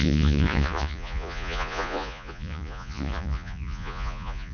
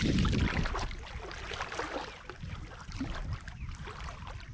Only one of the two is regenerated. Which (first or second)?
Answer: first